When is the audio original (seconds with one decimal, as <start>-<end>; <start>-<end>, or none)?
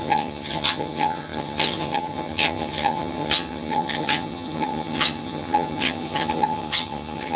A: none